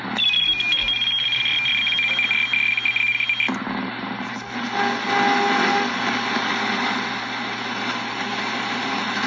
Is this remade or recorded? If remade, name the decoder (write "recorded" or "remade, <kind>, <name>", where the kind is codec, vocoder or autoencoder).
recorded